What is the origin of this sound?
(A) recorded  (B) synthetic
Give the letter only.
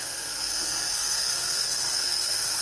B